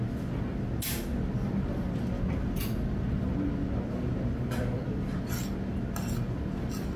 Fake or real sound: real